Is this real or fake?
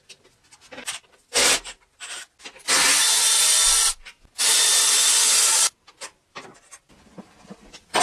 real